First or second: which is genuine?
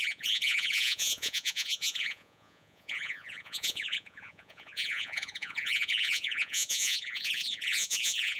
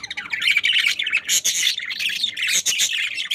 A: second